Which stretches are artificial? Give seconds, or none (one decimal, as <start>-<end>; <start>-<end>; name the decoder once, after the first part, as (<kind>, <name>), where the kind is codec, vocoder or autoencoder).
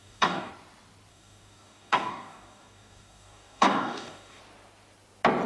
0.0-0.5 (codec, DAC); 1.1-4.4